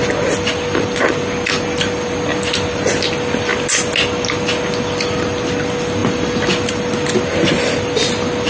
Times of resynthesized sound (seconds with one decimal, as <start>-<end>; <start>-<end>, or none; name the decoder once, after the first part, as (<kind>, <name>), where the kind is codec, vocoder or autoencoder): none